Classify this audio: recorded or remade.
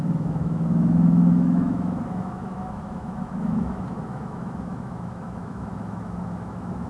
remade